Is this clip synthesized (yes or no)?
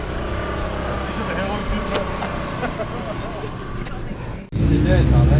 no